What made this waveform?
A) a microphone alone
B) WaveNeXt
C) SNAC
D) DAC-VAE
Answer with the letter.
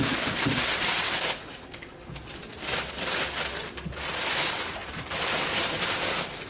A